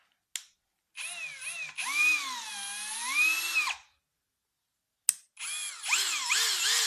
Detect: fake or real real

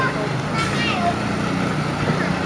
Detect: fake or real real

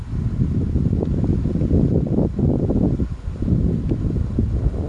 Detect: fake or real fake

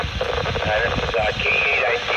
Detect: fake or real real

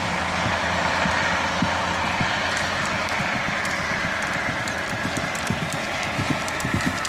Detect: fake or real real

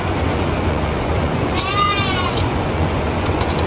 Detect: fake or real fake